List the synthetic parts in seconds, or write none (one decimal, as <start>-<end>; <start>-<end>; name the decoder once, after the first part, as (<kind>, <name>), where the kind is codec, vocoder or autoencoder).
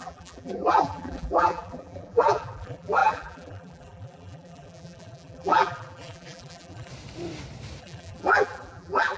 0.0-6.9 (vocoder, BigVGAN v2); 7.8-9.2